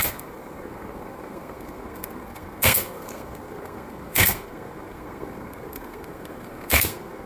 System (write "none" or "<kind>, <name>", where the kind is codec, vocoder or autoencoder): codec, SNAC